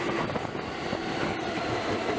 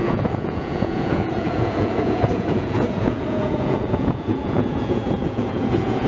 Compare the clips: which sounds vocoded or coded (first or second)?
second